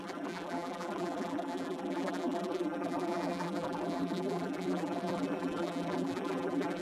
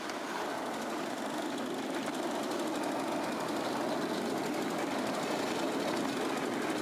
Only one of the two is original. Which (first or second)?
second